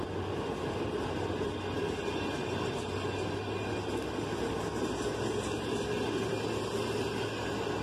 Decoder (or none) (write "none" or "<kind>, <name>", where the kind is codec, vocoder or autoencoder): none